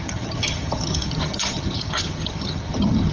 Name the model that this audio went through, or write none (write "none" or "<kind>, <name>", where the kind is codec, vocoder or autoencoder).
vocoder, HiFi-GAN